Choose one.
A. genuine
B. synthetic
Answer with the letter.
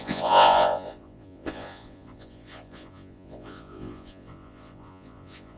B